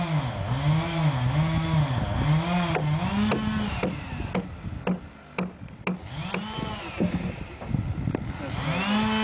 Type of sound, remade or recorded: recorded